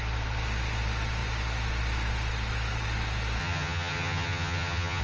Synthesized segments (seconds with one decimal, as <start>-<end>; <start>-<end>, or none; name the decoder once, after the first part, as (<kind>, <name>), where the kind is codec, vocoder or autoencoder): 3.4-5.0 (vocoder, HiFi-GAN)